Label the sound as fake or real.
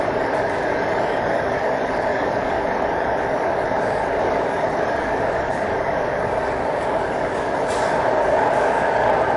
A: fake